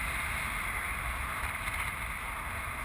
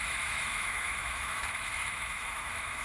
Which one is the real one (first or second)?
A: first